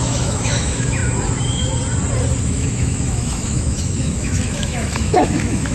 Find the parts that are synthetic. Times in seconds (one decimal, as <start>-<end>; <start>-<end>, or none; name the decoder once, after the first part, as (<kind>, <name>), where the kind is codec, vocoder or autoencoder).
0.0-1.0 (autoencoder, DAC-VAE); 2.4-5.7